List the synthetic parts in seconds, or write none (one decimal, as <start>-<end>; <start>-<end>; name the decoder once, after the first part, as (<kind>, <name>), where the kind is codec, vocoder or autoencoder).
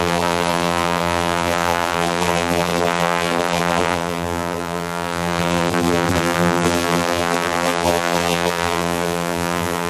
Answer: 0.0-9.9 (vocoder, BigVGAN v2)